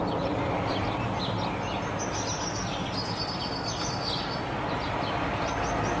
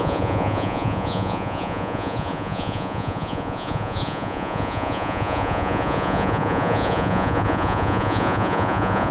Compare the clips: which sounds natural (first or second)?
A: first